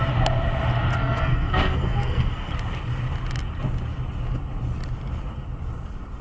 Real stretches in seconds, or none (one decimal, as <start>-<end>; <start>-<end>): 0.0-1.0; 2.5-6.2